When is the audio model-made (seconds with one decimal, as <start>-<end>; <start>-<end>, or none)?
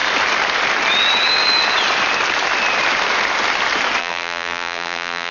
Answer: 4.0-5.3